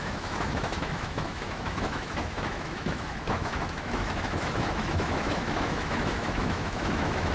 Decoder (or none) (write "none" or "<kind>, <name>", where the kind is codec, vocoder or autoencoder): autoencoder, DAC-VAE